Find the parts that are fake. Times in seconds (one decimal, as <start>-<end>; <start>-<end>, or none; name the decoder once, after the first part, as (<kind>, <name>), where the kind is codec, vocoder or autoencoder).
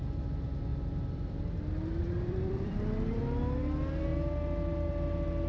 0.7-1.4 (vocoder, BigVGAN v2); 2.0-3.2